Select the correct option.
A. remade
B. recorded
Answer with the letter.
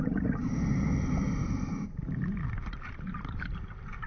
B